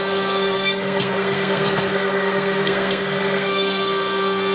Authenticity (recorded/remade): remade